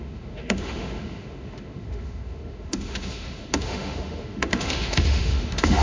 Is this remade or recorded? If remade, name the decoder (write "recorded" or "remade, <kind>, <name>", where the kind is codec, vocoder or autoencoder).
remade, autoencoder, DAC-VAE